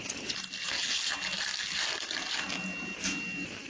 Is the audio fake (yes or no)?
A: no